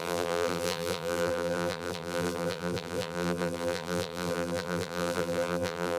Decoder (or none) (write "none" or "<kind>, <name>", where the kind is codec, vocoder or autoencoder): vocoder, BigVGAN v2